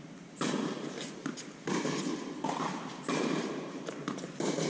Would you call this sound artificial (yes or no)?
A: yes